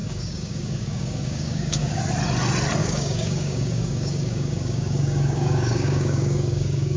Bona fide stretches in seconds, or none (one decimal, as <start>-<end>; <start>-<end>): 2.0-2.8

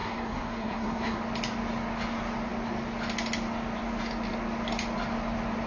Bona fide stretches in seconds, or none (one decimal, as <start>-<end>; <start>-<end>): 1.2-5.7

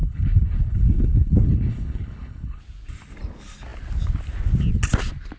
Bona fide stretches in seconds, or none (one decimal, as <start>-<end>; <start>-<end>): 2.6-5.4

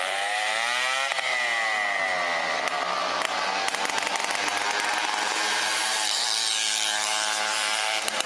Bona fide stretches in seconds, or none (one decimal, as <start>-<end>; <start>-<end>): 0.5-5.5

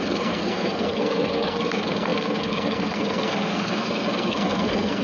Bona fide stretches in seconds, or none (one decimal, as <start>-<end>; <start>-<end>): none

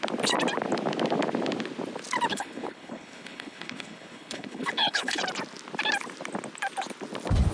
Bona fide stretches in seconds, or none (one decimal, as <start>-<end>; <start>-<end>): 0.0-2.3; 5.2-7.5